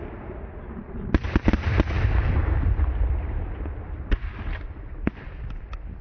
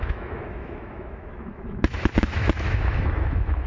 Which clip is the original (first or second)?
first